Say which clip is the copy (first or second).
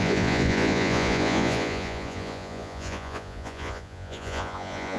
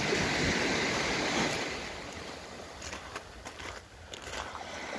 first